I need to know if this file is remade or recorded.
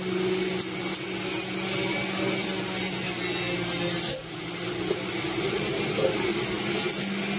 recorded